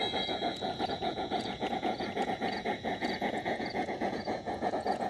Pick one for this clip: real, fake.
fake